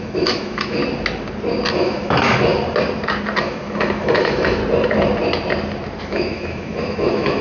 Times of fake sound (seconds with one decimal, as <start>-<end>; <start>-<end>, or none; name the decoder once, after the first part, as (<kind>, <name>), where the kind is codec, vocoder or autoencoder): 0.0-0.8 (autoencoder, DAC-VAE); 1.7-2.4; 3.4-4.6; 6.0-7.4